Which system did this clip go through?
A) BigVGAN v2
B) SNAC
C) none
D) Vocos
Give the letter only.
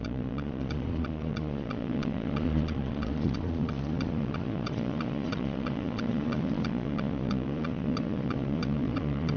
D